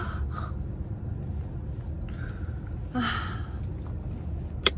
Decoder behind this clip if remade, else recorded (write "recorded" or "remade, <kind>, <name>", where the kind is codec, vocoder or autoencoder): recorded